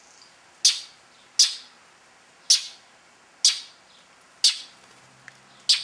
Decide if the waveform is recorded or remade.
recorded